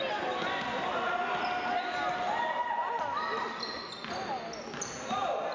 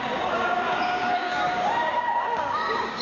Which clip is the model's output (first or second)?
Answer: second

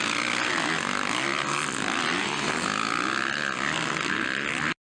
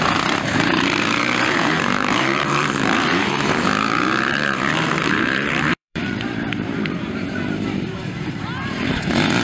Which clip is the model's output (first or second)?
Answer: second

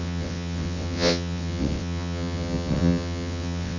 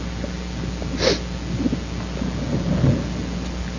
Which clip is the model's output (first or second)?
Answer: first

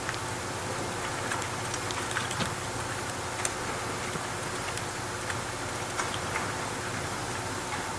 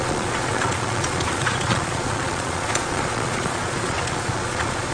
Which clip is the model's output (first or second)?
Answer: second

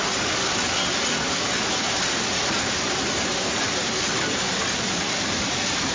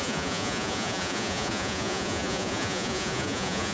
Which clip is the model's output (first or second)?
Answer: second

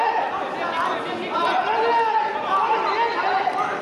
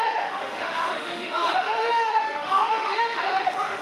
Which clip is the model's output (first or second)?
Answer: second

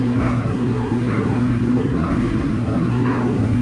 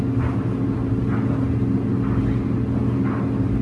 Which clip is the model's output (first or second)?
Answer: first